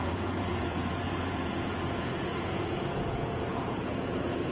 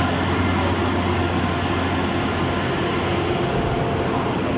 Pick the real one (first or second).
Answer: second